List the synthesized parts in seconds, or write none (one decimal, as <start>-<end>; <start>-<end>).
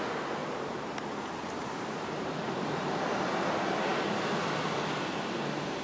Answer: 0.4-0.9; 1.4-3.3